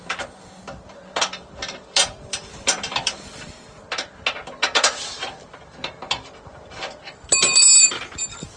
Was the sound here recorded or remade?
remade